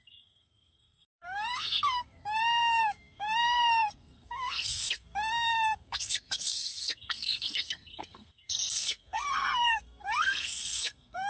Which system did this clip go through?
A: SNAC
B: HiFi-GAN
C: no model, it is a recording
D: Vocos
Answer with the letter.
A